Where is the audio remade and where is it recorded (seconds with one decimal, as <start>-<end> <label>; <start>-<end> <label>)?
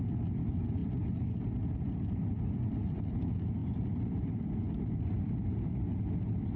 0.0-6.6 recorded